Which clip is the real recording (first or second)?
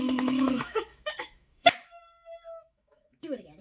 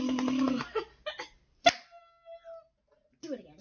second